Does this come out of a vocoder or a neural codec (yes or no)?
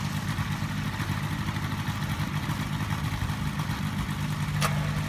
no